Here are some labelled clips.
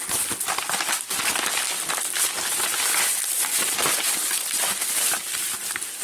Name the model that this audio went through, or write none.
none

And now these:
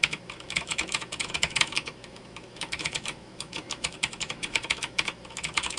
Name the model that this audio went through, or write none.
autoencoder, DAC-VAE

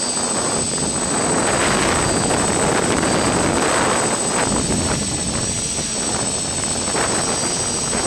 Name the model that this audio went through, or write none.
none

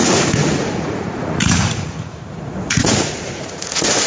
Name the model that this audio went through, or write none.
vocoder, Vocos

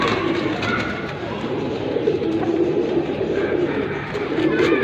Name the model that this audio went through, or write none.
vocoder, BigVGAN v2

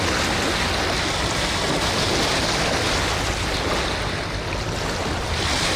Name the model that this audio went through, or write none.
none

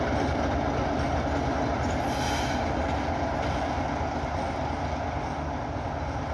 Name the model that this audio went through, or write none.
none